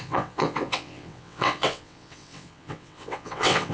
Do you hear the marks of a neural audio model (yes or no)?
yes